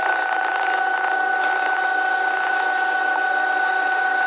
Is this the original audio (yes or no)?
yes